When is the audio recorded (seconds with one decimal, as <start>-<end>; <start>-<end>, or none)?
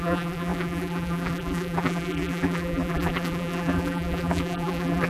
none